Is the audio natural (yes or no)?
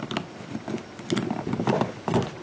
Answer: yes